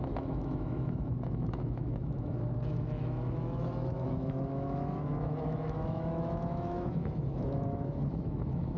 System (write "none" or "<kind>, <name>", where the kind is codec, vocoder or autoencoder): autoencoder, DAC-VAE